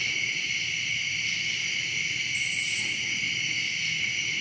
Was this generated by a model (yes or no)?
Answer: no